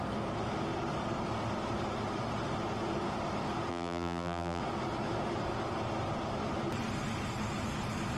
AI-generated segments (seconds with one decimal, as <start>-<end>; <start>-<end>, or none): 3.7-4.6